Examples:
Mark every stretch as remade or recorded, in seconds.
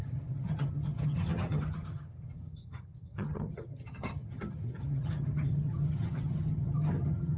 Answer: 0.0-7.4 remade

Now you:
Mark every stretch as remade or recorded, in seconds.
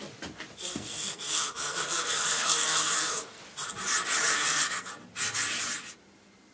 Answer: 0.0-0.7 recorded; 0.7-3.4 remade; 3.4-4.3 recorded; 4.3-4.9 remade; 4.9-6.5 recorded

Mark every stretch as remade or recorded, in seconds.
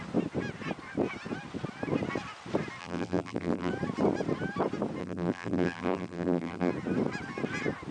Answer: 0.0-2.8 recorded; 2.8-3.7 remade; 3.7-5.0 recorded; 5.0-6.7 remade; 6.7-7.9 recorded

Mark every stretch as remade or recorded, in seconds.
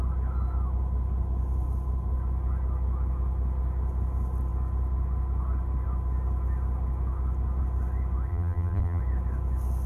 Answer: 0.0-8.3 recorded; 8.3-9.0 remade; 9.0-9.9 recorded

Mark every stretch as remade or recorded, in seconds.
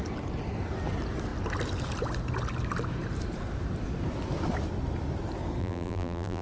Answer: 0.0-5.6 recorded; 5.6-6.4 remade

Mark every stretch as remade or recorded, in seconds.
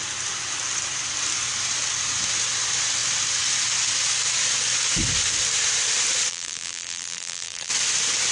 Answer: 0.0-6.3 recorded; 6.3-7.7 remade; 7.7-8.3 recorded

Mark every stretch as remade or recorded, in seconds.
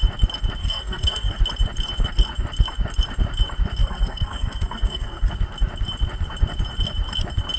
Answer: 0.0-0.6 recorded; 0.6-1.4 remade; 1.4-3.8 recorded; 3.8-5.3 remade; 5.3-7.6 recorded